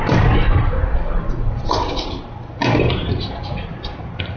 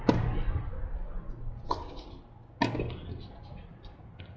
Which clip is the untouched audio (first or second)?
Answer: second